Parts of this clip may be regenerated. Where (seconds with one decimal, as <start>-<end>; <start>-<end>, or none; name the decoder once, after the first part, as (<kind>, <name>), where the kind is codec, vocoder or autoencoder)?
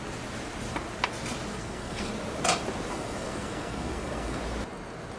1.5-2.1 (codec, SNAC); 2.9-4.4